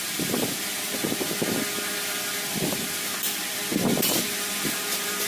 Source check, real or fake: real